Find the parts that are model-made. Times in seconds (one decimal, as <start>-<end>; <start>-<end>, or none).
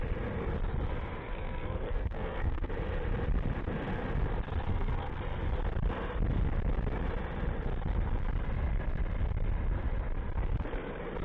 1.3-2.7; 4.7-5.2